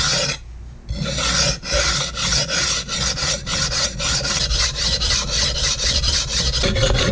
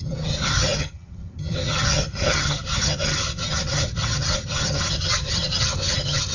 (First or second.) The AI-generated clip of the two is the second